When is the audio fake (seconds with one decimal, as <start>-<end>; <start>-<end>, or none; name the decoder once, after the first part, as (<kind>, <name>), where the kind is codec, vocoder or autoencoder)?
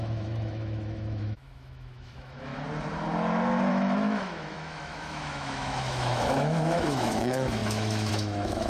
0.0-2.5 (autoencoder, DAC-VAE); 3.7-8.7